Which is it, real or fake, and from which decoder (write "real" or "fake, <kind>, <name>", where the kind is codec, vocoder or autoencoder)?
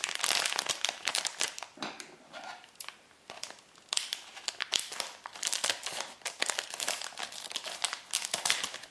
real